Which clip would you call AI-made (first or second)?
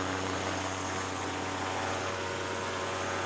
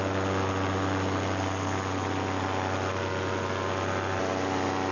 first